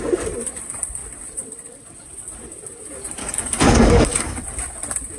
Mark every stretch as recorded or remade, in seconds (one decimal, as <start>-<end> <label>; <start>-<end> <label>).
0.0-3.2 recorded; 3.2-4.4 remade; 4.4-5.2 recorded